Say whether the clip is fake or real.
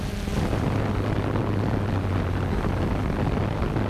real